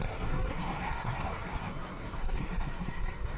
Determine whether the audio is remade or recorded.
remade